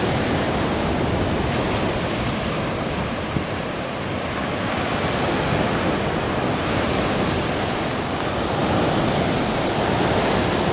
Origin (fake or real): real